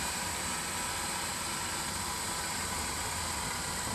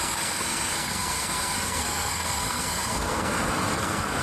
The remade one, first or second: second